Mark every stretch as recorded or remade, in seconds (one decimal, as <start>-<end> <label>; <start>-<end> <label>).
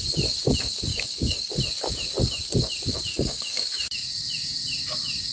0.0-0.9 recorded; 0.9-1.5 remade; 1.5-3.1 recorded; 3.1-3.6 remade; 3.6-5.3 recorded